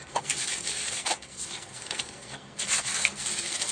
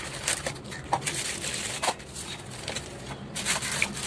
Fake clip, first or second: first